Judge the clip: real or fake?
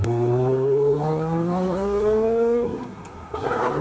fake